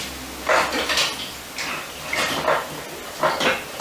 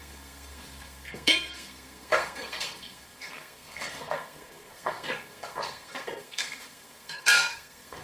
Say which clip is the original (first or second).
first